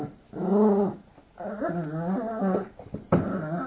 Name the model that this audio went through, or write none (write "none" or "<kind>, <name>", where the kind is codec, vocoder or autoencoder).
none